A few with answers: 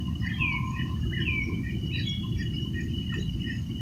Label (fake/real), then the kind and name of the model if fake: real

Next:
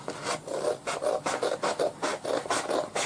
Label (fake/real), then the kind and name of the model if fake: real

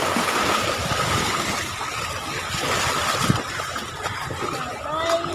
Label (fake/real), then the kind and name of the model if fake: fake, vocoder, BigVGAN v2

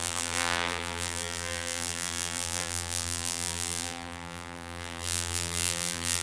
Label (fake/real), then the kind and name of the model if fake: fake, vocoder, BigVGAN v2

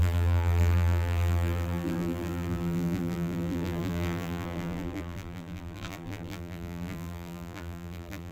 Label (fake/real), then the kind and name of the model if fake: fake, vocoder, BigVGAN v2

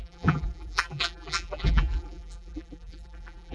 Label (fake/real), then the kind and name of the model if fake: fake, vocoder, BigVGAN v2